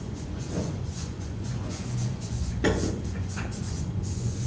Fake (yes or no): yes